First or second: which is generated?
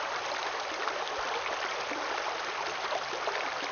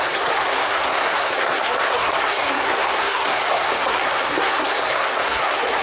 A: second